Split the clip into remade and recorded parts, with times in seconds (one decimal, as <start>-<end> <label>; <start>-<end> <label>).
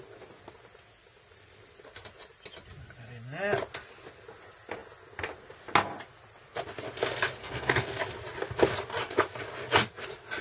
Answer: 0.0-7.4 recorded; 7.4-8.0 remade; 8.0-10.4 recorded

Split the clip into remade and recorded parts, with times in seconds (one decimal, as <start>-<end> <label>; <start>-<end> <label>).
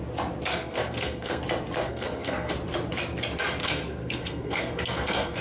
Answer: 0.0-0.5 recorded; 0.5-1.4 remade; 1.4-1.8 recorded; 1.8-2.5 remade; 2.5-3.6 recorded; 3.6-5.4 remade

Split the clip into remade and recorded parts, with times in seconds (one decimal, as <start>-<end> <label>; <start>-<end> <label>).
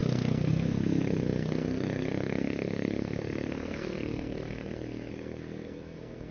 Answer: 0.0-6.3 remade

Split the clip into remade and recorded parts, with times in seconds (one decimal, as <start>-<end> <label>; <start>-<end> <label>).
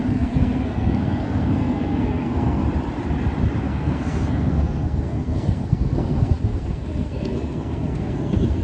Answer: 0.0-2.6 remade; 2.6-3.6 recorded; 3.6-8.6 remade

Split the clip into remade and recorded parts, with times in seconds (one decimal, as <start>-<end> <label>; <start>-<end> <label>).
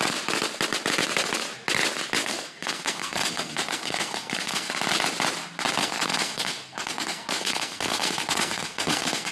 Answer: 0.0-2.2 recorded; 2.2-4.7 remade; 4.7-5.8 recorded; 5.8-9.3 remade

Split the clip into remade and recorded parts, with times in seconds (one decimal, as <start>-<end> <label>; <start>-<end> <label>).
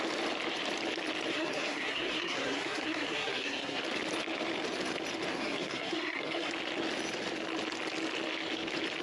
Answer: 0.0-1.3 recorded; 1.3-3.8 remade; 3.8-5.3 recorded; 5.3-6.5 remade; 6.5-9.0 recorded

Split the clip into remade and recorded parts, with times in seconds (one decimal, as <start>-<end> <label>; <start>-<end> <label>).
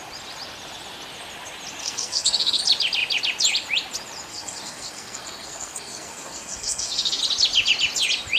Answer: 0.0-1.8 recorded; 1.8-2.6 remade; 2.6-4.3 recorded; 4.3-7.2 remade; 7.2-8.4 recorded